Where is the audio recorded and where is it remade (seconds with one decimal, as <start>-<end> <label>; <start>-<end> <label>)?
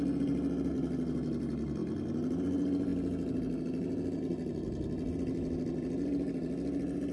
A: 0.0-7.1 recorded